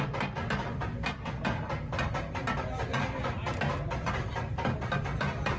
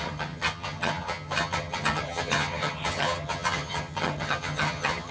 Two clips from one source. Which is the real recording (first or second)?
first